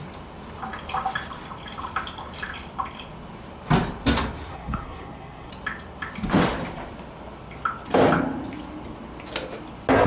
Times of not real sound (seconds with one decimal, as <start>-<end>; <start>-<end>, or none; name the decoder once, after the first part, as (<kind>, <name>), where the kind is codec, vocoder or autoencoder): 4.5-5.5 (codec, SNAC)